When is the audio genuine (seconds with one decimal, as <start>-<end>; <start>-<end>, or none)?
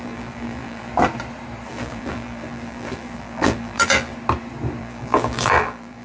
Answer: 0.9-1.7; 4.1-4.8